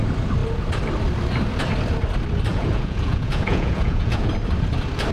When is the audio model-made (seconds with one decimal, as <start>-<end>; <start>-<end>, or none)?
2.5-4.3